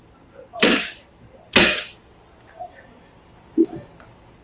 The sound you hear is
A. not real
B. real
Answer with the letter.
B